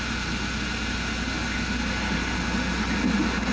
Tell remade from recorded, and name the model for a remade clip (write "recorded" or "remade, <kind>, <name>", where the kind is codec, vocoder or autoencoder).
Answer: recorded